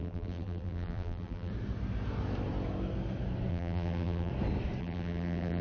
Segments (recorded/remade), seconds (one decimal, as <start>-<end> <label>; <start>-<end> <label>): 0.0-1.5 remade; 1.5-3.5 recorded; 3.5-4.3 remade; 4.3-4.8 recorded; 4.8-5.6 remade